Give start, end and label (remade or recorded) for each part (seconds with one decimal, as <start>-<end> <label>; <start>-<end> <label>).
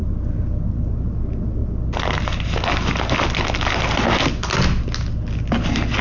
0.0-6.0 recorded